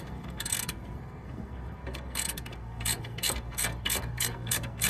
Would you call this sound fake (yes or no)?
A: yes